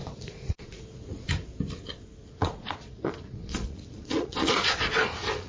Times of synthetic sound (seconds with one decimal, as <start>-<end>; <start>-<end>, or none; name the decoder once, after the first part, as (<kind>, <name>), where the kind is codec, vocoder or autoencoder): 0.0-1.3 (vocoder, Vocos); 2.2-5.5